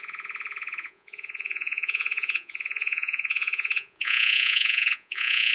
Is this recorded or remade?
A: remade